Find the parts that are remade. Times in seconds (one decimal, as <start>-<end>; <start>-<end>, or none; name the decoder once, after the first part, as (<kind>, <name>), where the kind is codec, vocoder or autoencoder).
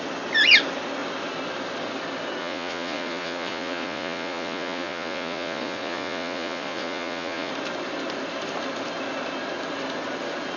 2.4-7.5 (vocoder, Vocos)